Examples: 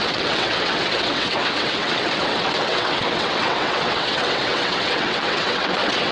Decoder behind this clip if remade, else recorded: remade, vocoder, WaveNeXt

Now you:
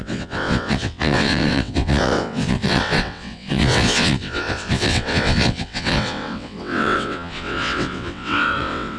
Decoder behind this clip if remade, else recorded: remade, vocoder, WaveNeXt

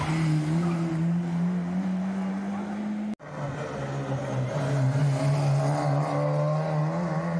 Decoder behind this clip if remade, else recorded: recorded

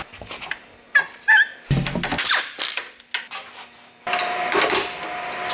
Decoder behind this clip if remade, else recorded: recorded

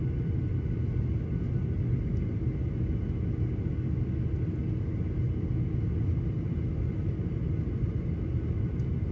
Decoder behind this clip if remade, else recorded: recorded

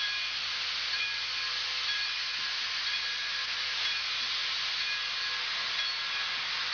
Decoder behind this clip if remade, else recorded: recorded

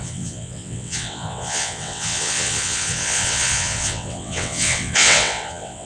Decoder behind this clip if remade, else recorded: remade, vocoder, WaveNeXt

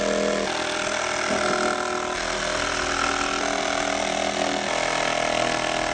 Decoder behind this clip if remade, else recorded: recorded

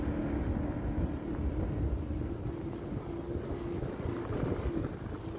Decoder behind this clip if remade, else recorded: recorded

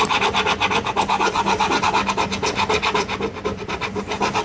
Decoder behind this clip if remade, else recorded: recorded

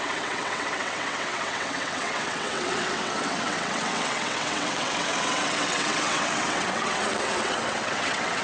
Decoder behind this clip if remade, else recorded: remade, vocoder, WaveNeXt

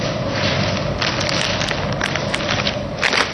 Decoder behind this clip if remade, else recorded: recorded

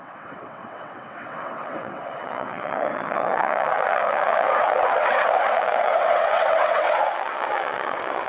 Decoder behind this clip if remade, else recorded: remade, vocoder, WaveNeXt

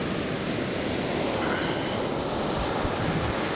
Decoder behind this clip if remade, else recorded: recorded